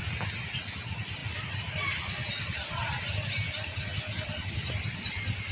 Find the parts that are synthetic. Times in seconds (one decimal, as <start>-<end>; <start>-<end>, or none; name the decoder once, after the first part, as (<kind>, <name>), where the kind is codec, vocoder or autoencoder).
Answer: none